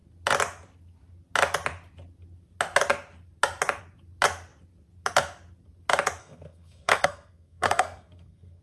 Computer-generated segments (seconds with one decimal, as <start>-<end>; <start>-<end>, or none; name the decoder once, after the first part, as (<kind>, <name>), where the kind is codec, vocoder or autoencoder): 6.2-8.6 (codec, SNAC)